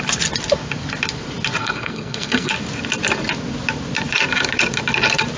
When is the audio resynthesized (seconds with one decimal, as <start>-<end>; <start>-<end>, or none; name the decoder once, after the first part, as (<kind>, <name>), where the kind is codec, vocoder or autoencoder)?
1.6-2.5 (codec, SNAC)